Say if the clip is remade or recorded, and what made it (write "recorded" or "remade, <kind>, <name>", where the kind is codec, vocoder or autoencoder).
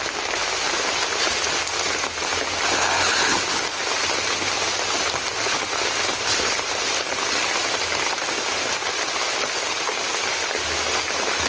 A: recorded